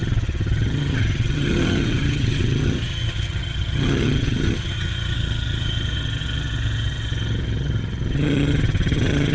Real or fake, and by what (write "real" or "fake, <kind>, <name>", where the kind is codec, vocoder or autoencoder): fake, vocoder, HiFi-GAN